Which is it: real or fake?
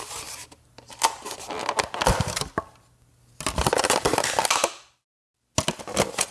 real